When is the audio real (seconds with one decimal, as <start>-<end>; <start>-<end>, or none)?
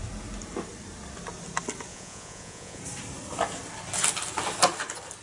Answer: 0.0-1.9; 2.8-5.2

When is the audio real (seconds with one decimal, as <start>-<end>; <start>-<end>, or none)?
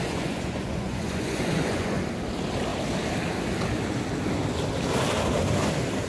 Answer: 2.0-6.1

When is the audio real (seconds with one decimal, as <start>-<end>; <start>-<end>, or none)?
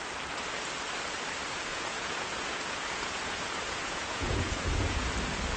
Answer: 0.0-1.7; 5.1-5.6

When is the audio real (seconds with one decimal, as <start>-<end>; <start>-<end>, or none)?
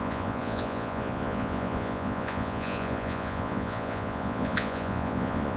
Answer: none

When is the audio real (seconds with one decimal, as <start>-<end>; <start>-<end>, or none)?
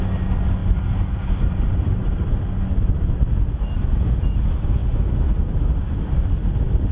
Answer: 0.0-6.9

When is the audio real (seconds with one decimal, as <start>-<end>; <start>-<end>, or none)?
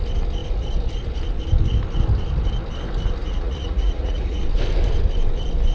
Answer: 0.0-3.2; 4.4-5.7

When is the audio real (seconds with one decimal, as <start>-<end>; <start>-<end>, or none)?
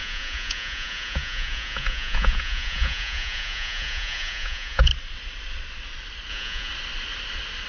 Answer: 4.9-6.3; 6.7-7.7